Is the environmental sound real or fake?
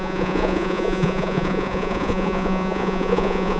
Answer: fake